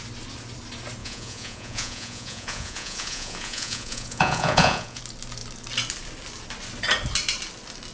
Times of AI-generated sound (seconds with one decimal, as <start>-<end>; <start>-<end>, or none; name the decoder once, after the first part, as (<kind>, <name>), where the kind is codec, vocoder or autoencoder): 1.0-5.0 (vocoder, Vocos)

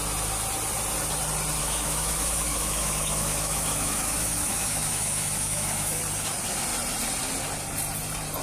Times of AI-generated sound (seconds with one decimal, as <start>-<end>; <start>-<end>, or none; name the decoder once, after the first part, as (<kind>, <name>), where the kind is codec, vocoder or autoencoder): 1.6-6.0 (autoencoder, DAC-VAE)

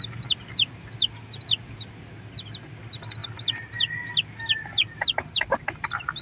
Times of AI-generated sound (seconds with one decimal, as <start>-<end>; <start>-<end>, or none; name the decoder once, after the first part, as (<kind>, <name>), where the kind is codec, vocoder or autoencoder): none

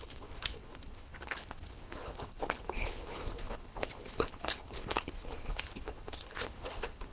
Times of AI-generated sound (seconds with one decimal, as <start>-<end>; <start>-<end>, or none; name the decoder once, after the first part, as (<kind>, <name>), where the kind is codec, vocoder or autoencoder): 0.0-7.1 (codec, HILCodec)

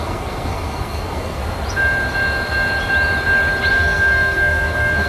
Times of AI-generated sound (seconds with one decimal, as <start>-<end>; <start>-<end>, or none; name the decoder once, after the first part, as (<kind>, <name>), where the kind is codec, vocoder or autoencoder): 0.0-1.4 (codec, SNAC); 3.7-5.1

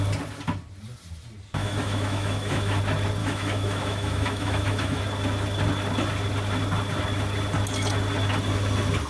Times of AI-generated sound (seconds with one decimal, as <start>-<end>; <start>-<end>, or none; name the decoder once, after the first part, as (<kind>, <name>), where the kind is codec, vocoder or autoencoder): 1.6-2.8 (autoencoder, DAC-VAE); 3.2-5.0

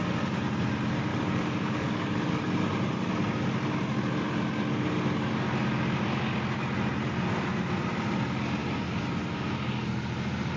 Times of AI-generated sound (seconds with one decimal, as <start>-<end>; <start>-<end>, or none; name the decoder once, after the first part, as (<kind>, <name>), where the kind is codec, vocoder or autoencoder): 1.1-2.3 (codec, DAC)

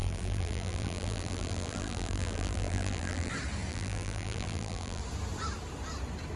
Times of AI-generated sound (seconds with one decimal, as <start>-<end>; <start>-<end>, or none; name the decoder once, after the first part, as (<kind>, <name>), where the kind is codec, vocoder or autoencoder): 0.0-3.3 (vocoder, BigVGAN v2); 3.7-5.0